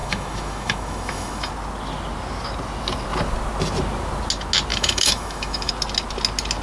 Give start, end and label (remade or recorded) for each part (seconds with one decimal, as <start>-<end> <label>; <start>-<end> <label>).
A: 0.0-1.5 remade; 1.5-4.7 recorded; 4.7-5.7 remade; 5.7-6.6 recorded